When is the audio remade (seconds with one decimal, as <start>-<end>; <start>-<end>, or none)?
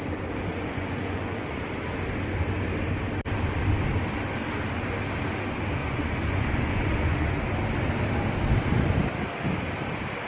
0.5-1.6; 5.8-7.3